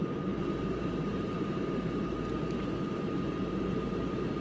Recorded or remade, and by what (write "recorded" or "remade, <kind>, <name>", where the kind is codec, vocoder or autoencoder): remade, vocoder, BigVGAN v2